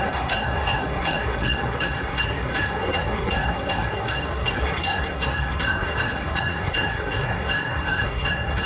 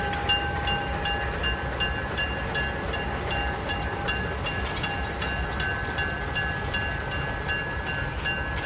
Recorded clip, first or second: second